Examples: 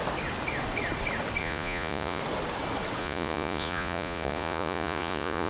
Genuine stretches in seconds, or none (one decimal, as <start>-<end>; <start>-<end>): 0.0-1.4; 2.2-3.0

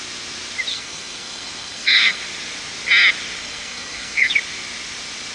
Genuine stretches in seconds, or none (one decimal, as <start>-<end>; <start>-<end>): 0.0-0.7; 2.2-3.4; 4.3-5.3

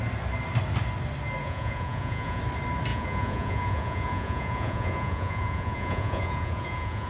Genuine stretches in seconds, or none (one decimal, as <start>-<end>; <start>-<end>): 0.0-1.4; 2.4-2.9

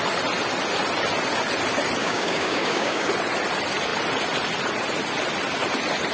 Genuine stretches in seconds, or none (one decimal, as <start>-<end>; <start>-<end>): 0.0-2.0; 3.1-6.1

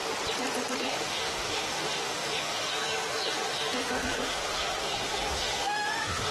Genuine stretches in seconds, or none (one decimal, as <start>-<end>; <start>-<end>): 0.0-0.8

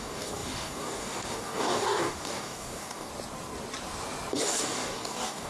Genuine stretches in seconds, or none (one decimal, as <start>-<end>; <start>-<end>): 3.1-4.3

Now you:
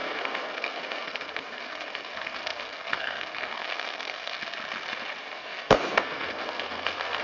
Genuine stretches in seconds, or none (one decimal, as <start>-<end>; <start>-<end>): 4.4-5.2